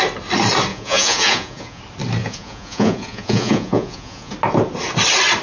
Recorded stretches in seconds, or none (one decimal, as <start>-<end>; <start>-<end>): 0.0-0.7; 1.8-2.2; 4.3-5.4